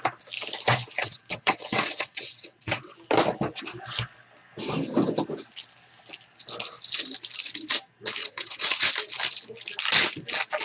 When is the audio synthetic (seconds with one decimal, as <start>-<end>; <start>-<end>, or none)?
1.0-2.9; 8.2-8.9